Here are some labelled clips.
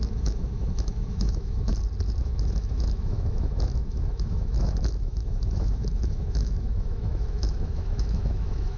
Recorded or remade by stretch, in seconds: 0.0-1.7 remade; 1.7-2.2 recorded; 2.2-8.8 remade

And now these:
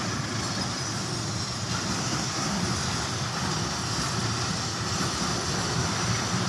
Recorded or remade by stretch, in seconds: 0.0-2.0 recorded; 2.0-2.6 remade; 2.6-6.5 recorded

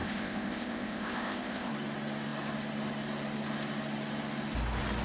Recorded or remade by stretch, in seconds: 0.0-1.7 remade; 1.7-5.0 recorded

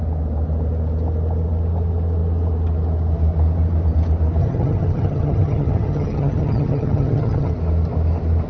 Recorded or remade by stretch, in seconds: 0.0-4.4 recorded; 4.4-7.5 remade; 7.5-8.5 recorded

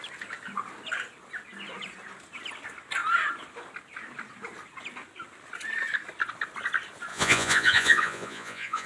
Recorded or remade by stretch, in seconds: 0.0-7.1 recorded; 7.1-8.9 remade

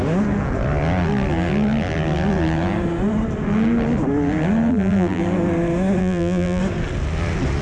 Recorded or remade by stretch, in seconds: 0.0-4.7 recorded; 4.7-5.2 remade; 5.2-6.0 recorded; 6.0-6.6 remade; 6.6-7.6 recorded

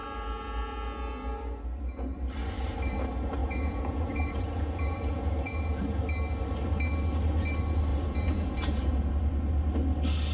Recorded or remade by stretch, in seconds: 0.0-3.4 recorded; 3.4-6.0 remade; 6.0-7.9 recorded; 7.9-9.1 remade; 9.1-10.3 recorded

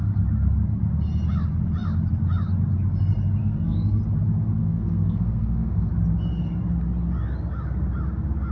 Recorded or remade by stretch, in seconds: 0.0-3.4 recorded; 3.4-4.0 remade; 4.0-4.6 recorded; 4.6-5.9 remade; 5.9-8.5 recorded